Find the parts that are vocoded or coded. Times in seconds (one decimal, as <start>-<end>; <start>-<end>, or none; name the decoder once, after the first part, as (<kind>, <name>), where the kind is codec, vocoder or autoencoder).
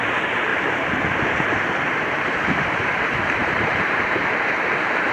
0.0-5.1 (vocoder, BigVGAN v2)